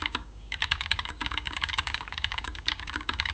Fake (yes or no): yes